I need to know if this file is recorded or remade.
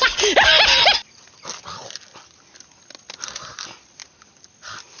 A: recorded